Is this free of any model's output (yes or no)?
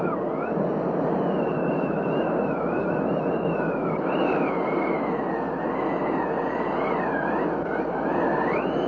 yes